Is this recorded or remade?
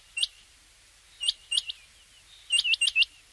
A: recorded